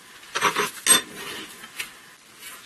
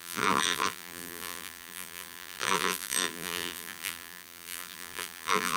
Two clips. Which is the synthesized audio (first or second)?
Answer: second